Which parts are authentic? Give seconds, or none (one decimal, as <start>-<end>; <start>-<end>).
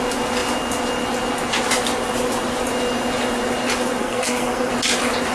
0.0-4.0; 4.7-5.3